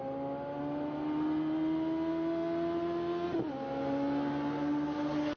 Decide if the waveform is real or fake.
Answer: real